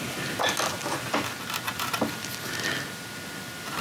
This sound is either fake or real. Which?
real